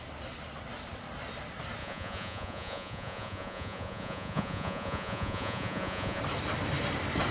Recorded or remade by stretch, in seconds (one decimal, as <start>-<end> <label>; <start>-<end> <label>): 0.0-1.8 recorded; 1.8-6.2 remade; 6.2-7.3 recorded